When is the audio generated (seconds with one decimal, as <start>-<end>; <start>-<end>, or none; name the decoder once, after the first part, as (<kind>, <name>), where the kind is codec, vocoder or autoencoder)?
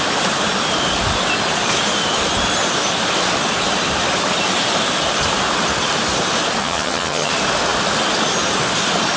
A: 6.6-7.3 (vocoder, HiFi-GAN)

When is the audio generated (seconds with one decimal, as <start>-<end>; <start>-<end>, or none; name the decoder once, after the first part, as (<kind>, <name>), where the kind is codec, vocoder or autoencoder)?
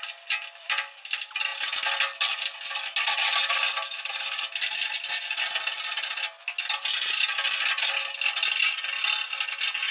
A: none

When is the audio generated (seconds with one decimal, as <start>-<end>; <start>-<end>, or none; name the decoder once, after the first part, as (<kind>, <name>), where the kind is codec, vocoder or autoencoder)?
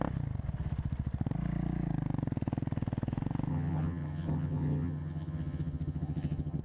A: 3.5-6.6 (vocoder, HiFi-GAN)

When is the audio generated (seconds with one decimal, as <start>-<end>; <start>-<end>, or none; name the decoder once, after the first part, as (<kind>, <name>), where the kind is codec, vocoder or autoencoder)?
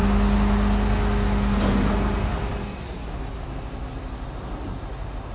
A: none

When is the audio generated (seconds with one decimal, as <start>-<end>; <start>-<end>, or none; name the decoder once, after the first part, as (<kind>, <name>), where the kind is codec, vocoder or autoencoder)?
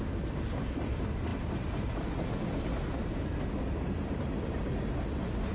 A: none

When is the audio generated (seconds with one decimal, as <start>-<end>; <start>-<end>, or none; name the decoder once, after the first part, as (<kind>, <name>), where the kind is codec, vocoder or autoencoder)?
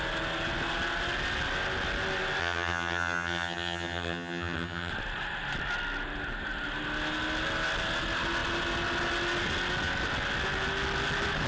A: 2.4-4.9 (vocoder, HiFi-GAN)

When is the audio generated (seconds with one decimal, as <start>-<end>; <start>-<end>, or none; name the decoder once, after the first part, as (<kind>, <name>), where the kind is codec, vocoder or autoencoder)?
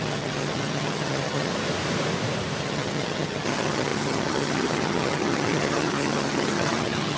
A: 0.0-1.5 (vocoder, HiFi-GAN); 2.6-7.2